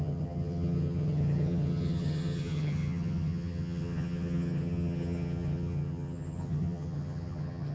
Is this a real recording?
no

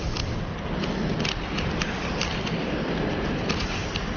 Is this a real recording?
no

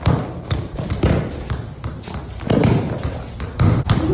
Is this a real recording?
yes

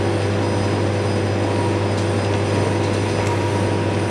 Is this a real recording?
yes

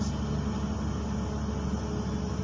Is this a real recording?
yes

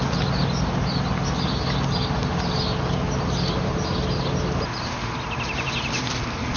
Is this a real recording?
yes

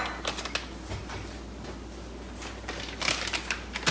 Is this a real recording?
yes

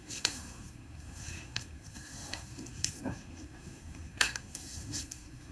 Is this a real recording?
no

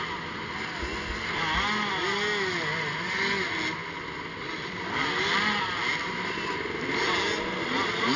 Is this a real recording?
yes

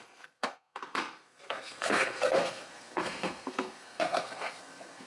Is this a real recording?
no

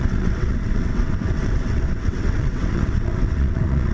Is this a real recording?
no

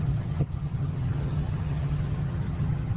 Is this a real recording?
no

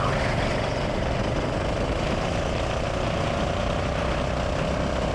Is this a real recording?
yes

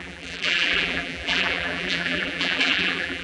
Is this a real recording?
no